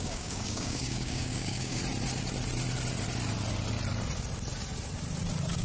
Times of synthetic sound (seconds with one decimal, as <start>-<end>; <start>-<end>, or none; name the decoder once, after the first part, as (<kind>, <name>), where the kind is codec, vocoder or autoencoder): 0.0-1.8 (codec, DAC)